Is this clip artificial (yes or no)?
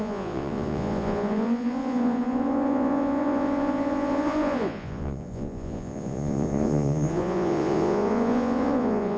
yes